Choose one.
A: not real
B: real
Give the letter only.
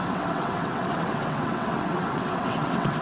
A